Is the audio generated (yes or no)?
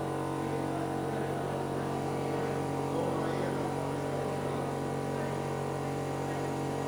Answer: no